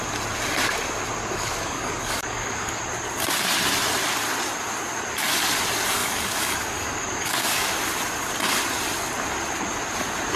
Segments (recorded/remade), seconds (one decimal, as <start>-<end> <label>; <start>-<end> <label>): 0.0-1.2 recorded; 1.2-2.8 remade; 2.8-6.0 recorded; 6.0-7.7 remade; 7.7-10.4 recorded